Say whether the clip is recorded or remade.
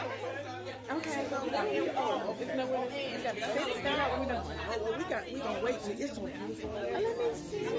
recorded